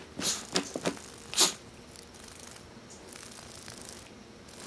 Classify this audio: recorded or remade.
recorded